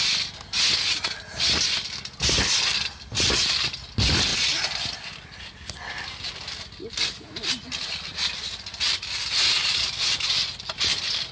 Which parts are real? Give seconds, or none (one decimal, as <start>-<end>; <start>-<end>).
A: 0.0-11.3